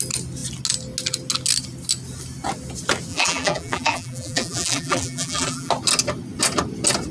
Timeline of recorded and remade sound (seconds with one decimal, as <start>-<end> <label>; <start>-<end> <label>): 0.0-3.1 recorded; 3.1-5.7 remade; 5.7-7.1 recorded